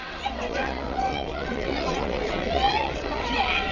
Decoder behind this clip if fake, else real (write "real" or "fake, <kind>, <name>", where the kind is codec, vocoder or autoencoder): fake, vocoder, WaveNeXt